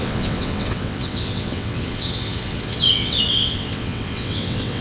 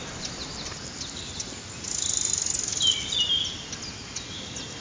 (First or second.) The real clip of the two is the second